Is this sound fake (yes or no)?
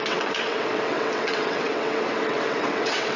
yes